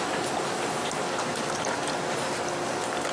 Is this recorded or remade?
recorded